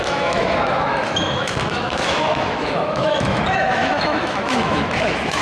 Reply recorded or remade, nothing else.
remade